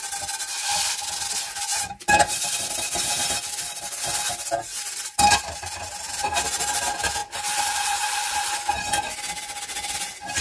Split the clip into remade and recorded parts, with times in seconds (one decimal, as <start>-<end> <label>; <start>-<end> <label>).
0.0-1.7 recorded; 1.7-2.3 remade; 2.3-4.7 recorded; 4.7-6.4 remade; 6.4-7.2 recorded; 7.2-8.5 remade; 8.5-10.4 recorded